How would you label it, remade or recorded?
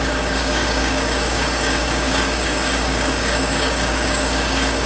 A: remade